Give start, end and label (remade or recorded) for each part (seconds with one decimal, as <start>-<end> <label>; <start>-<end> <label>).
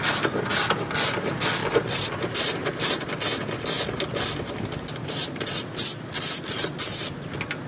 0.0-1.6 recorded; 1.6-3.1 remade; 3.1-5.0 recorded; 5.0-5.7 remade; 5.7-7.7 recorded